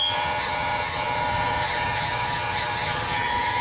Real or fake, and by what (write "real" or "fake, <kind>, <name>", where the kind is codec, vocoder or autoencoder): fake, vocoder, HiFi-GAN